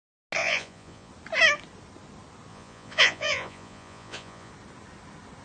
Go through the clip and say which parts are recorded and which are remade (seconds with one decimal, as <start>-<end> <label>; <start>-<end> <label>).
0.0-0.4 recorded; 0.4-1.1 remade; 1.1-2.5 recorded; 2.5-4.5 remade; 4.5-5.4 recorded